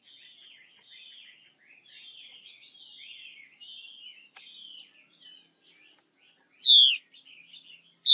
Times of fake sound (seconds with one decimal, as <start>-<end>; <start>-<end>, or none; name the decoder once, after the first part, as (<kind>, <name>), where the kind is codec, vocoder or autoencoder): none